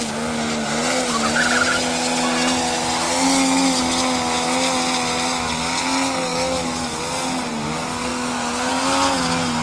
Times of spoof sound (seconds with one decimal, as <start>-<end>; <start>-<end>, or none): 6.3-7.0